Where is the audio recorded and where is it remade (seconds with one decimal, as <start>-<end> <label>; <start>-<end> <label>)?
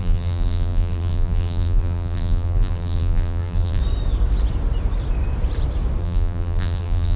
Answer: 0.0-3.8 remade; 3.8-6.0 recorded; 6.0-7.2 remade